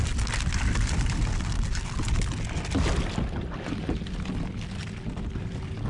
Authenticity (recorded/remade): recorded